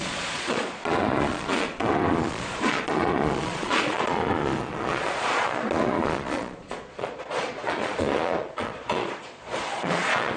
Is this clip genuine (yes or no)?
no